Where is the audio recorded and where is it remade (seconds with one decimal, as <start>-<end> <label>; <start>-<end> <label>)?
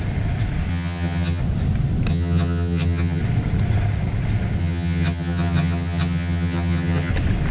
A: 0.0-0.7 recorded; 0.7-1.4 remade; 1.4-2.1 recorded; 2.1-3.2 remade; 3.2-4.6 recorded; 4.6-7.1 remade; 7.1-7.5 recorded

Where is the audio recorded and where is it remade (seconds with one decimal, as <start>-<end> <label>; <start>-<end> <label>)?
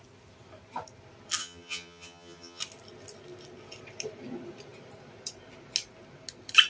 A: 0.0-1.4 recorded; 1.4-2.6 remade; 2.6-6.7 recorded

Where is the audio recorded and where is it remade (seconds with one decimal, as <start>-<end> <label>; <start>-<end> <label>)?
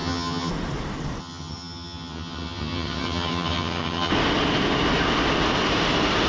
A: 0.0-0.5 remade; 0.5-1.2 recorded; 1.2-4.1 remade; 4.1-6.3 recorded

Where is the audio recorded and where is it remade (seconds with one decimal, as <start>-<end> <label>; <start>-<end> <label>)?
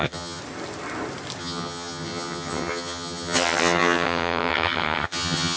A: 0.0-0.4 remade; 0.4-1.4 recorded; 1.4-5.6 remade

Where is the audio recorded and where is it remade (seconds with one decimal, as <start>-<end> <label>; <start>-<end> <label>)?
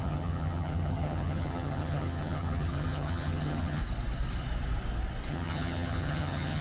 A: 0.0-3.8 remade; 3.8-5.3 recorded; 5.3-6.6 remade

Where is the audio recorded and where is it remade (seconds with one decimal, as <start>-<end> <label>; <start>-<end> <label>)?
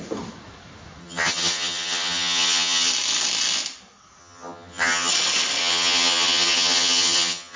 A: 0.0-1.0 recorded; 1.0-2.9 remade; 2.9-4.2 recorded; 4.2-5.1 remade; 5.1-5.6 recorded; 5.6-7.6 remade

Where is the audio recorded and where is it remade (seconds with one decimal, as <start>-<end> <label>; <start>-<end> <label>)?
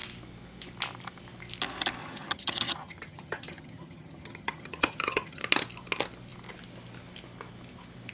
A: 0.0-2.0 recorded; 2.0-5.4 remade; 5.4-8.1 recorded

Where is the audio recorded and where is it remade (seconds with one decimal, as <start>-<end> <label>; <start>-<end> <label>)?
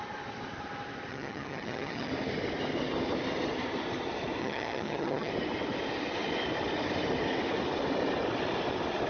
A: 0.0-1.1 recorded; 1.1-2.1 remade; 2.1-4.4 recorded; 4.4-5.3 remade; 5.3-9.1 recorded